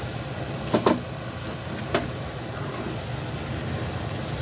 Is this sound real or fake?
real